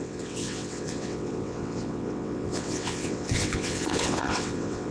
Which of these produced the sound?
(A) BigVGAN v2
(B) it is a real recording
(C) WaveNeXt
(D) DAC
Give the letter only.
C